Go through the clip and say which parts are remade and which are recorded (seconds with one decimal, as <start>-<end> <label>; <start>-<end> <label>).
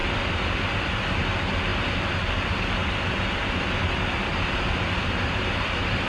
0.0-6.1 recorded